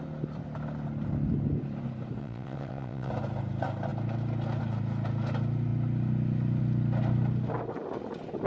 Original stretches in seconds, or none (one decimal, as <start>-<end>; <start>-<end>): 0.0-2.2; 3.1-8.5